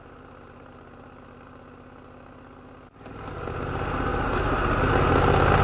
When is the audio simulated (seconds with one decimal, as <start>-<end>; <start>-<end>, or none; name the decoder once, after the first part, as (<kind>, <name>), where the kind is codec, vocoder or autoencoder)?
none

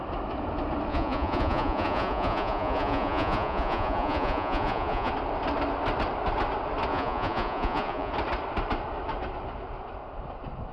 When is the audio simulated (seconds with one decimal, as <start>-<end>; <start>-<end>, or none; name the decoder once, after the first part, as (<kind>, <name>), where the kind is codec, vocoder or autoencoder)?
0.9-5.1 (vocoder, Vocos); 6.9-8.1